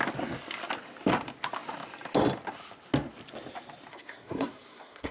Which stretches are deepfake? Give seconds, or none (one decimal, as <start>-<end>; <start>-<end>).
3.9-5.1